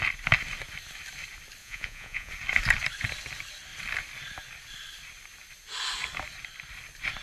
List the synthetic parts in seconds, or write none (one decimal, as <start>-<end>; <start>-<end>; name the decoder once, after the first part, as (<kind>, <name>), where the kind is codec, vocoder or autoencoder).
1.6-2.3 (vocoder, Vocos)